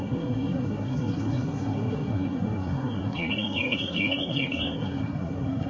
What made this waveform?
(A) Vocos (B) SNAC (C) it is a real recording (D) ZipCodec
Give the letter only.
B